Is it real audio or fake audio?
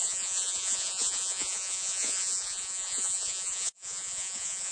fake